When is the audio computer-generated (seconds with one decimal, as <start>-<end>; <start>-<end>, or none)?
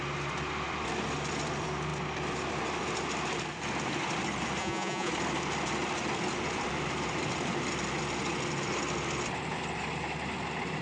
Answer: 4.6-5.1